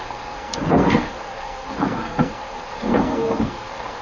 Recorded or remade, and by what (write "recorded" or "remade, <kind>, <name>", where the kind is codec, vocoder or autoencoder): remade, codec, SNAC